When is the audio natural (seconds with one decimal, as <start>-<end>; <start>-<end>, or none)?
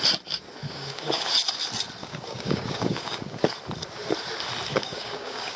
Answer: 0.0-0.6; 1.3-2.0; 3.5-4.7